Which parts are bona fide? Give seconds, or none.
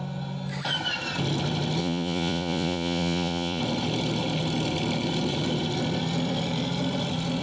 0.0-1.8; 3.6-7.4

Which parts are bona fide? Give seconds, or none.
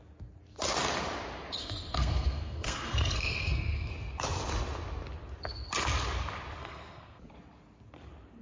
0.0-1.6; 3.9-6.6; 7.2-8.4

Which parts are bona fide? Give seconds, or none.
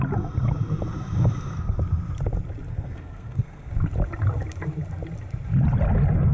0.0-2.7; 3.7-6.3